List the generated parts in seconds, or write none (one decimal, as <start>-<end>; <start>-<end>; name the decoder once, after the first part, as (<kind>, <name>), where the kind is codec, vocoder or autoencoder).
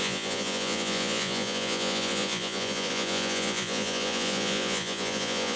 0.0-5.6 (vocoder, Vocos)